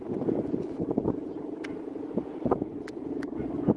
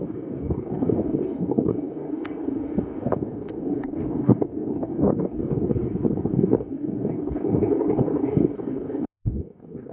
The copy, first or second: second